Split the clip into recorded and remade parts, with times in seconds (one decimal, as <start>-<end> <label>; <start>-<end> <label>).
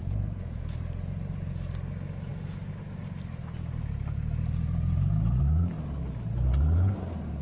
0.0-0.6 remade; 0.6-7.4 recorded